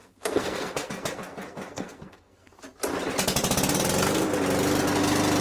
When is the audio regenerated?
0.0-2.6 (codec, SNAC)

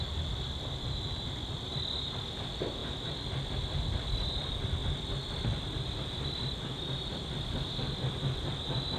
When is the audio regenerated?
none

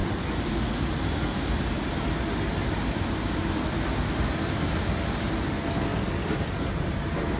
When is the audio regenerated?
none

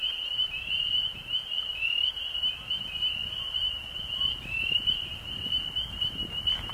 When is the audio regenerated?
none

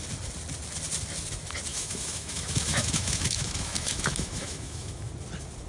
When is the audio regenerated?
1.7-5.1 (autoencoder, DAC-VAE)

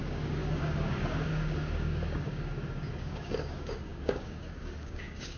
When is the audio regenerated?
0.0-5.4 (codec, DAC)

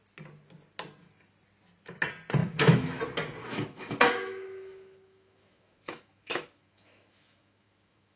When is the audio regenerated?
2.4-3.0 (autoencoder, DAC-VAE); 3.4-8.2

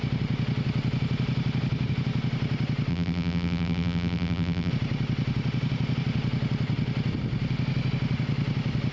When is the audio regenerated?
2.9-4.7 (vocoder, BigVGAN v2)